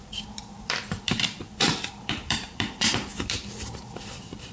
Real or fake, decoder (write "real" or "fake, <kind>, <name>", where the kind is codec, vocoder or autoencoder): fake, vocoder, BigVGAN v2